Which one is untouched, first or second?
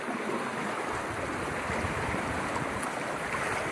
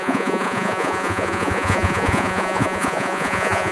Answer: first